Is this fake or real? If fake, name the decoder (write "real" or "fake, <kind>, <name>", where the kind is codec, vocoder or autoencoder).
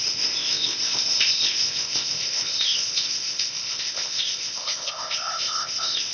fake, codec, ZipCodec